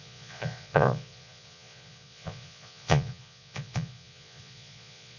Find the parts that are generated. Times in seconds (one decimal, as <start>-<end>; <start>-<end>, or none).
0.0-5.2